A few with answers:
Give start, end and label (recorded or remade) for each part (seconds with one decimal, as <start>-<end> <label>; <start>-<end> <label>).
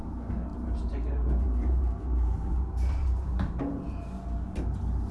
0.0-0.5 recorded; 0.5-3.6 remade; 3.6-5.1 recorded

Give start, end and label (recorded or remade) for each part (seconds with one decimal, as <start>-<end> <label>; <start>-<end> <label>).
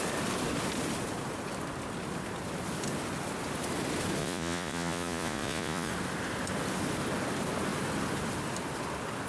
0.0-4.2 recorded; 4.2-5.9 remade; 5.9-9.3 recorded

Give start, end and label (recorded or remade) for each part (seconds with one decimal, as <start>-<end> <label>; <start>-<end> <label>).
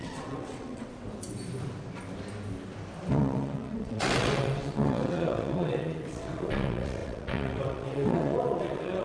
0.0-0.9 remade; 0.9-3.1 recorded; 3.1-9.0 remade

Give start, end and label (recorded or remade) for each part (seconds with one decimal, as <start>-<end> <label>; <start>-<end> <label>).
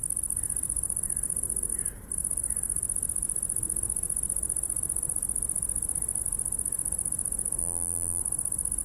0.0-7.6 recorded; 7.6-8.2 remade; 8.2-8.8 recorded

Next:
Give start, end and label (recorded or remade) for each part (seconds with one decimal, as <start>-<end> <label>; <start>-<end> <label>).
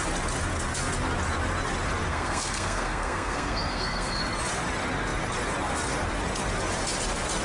0.0-2.1 recorded; 2.1-4.2 remade; 4.2-7.4 recorded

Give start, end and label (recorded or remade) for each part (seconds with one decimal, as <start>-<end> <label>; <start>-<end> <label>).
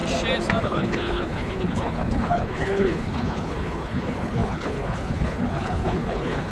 0.0-0.6 recorded; 0.6-6.5 remade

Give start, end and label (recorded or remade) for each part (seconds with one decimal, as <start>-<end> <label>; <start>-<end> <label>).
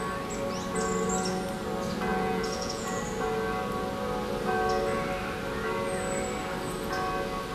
0.0-2.1 recorded; 2.1-3.0 remade; 3.0-7.5 recorded